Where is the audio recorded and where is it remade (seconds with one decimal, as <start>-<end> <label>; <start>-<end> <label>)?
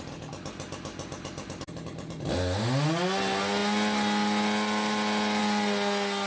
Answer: 0.0-6.3 recorded